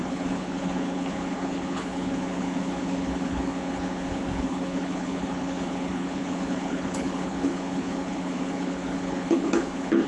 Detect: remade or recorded remade